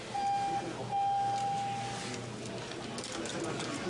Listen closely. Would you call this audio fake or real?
real